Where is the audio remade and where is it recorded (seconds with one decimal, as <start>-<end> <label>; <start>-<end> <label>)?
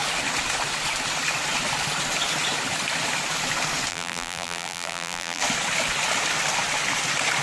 0.0-3.9 recorded; 3.9-5.4 remade; 5.4-7.4 recorded